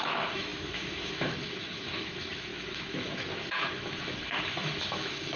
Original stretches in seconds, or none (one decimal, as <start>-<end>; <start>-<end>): none

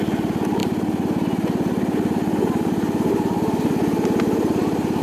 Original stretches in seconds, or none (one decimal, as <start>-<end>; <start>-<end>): 0.0-5.0

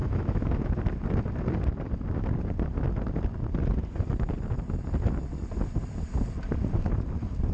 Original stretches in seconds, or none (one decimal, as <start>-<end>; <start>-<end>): 0.7-7.5

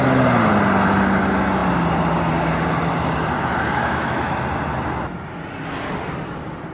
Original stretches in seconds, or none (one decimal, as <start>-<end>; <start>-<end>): 0.0-3.8; 4.3-6.7

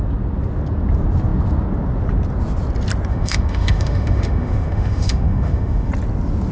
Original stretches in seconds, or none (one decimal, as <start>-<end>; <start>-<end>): 0.0-3.1; 5.9-6.5

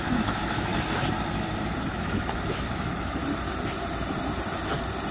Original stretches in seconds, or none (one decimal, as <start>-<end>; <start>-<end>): 0.7-1.9; 3.2-5.1

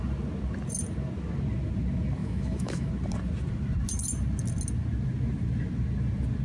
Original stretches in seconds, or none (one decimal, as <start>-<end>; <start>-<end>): 0.0-2.2; 2.9-6.4

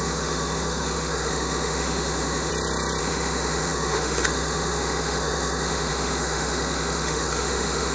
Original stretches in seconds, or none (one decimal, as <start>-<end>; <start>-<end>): 2.5-3.0